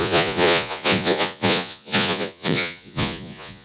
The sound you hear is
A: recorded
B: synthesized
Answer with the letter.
B